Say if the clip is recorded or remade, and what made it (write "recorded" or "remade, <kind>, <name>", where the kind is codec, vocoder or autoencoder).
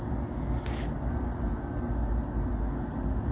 recorded